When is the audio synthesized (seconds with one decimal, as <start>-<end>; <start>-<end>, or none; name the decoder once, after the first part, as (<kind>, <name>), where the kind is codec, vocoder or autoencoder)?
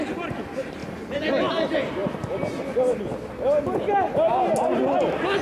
none